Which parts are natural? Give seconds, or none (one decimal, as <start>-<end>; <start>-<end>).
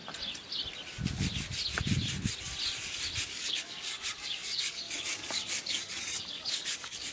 0.0-3.3